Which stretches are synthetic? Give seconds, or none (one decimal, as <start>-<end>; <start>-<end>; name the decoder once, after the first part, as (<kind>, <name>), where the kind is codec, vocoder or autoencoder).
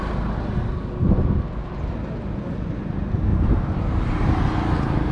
3.3-4.3 (vocoder, BigVGAN v2)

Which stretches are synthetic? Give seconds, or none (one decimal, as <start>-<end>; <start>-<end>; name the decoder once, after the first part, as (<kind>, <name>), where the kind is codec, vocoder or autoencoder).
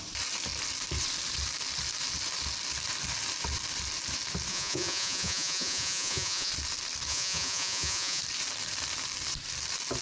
4.5-6.5 (vocoder, Vocos); 7.1-8.2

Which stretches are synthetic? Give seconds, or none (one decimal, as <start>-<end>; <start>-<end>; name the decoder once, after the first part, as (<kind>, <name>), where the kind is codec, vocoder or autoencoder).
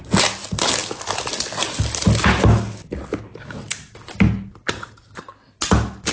none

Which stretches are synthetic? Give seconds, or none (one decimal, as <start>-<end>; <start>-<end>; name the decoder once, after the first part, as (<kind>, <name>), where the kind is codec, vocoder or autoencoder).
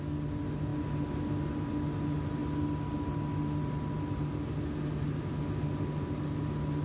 none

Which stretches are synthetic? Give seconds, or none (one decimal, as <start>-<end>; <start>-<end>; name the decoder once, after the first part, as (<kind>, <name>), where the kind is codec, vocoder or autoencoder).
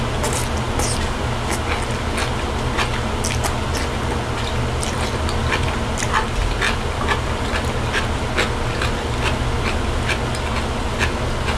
none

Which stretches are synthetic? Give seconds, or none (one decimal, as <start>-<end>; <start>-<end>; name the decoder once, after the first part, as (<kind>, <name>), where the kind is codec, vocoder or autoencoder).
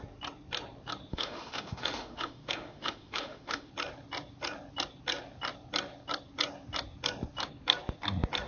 1.1-3.7 (autoencoder, DAC-VAE)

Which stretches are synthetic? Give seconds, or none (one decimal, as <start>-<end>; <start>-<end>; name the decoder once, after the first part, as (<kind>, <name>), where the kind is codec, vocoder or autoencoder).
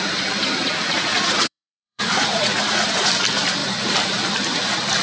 1.1-3.1 (vocoder, Vocos)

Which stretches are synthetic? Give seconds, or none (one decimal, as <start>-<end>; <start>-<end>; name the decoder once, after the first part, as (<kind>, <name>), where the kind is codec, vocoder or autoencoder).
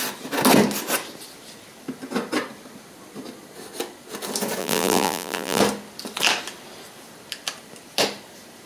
4.6-5.6 (vocoder, BigVGAN v2)